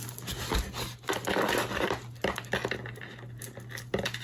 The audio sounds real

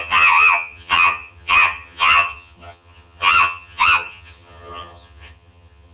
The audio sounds fake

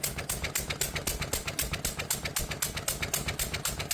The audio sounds real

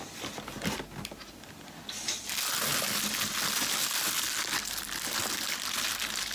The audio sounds real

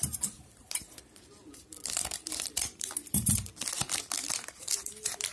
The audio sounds fake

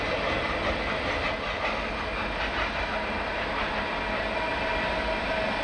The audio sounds real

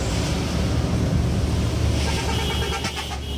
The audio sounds real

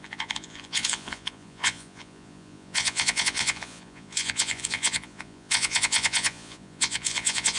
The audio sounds fake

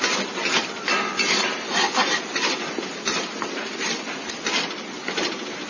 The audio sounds real